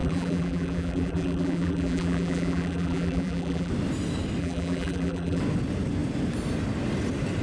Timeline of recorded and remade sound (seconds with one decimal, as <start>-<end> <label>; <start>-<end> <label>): 0.0-3.7 remade; 3.7-4.4 recorded; 4.4-5.4 remade; 5.4-7.4 recorded